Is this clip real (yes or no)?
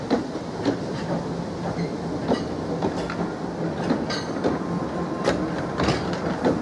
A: yes